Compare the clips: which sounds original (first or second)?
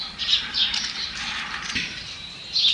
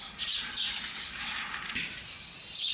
second